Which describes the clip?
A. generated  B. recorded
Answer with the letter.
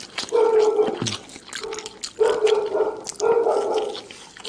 B